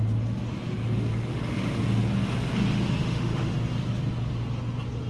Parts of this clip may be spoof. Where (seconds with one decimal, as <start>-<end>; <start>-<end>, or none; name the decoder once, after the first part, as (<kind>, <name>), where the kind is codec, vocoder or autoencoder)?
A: 1.3-1.8 (autoencoder, DAC-VAE); 3.0-3.5